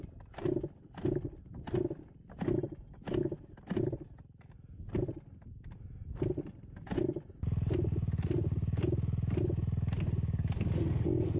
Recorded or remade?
recorded